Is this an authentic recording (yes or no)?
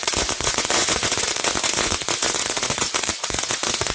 no